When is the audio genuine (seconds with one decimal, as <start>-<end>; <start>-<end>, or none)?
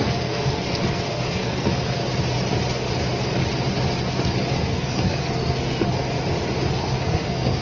2.0-4.5; 6.0-6.7